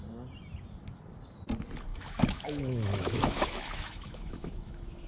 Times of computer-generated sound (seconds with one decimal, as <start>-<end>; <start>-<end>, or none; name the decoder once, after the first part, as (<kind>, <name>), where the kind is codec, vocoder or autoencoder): 1.9-5.1 (autoencoder, DAC-VAE)